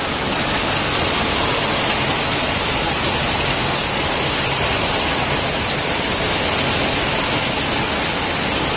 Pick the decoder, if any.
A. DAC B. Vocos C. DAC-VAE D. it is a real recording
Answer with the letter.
D